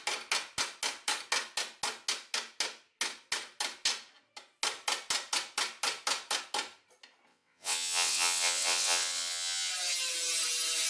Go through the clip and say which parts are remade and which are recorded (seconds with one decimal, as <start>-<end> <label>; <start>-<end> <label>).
0.0-7.3 recorded; 7.3-9.7 remade; 9.7-10.9 recorded